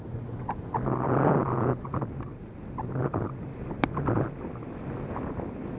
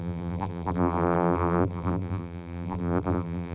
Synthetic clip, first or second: second